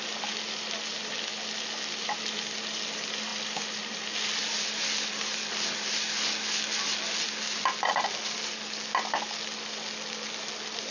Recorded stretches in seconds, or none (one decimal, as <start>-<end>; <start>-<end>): 0.0-10.9